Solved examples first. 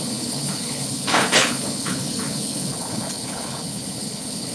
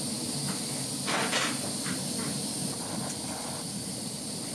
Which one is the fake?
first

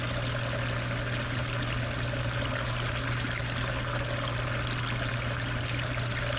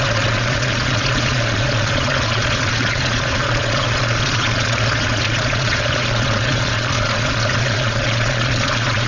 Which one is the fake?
second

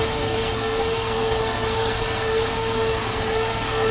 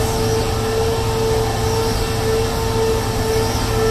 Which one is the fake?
first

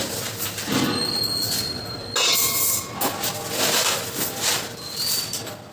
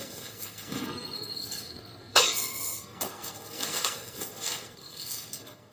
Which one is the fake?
second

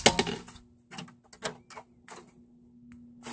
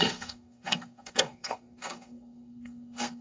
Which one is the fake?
second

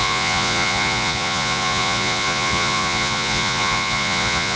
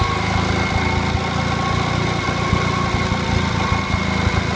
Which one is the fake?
first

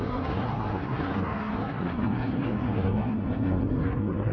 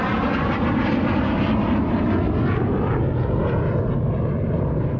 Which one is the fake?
first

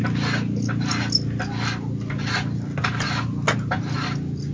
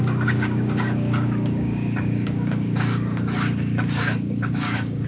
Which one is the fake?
second